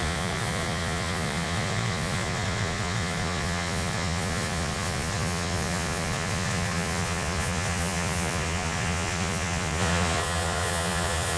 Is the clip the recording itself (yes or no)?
no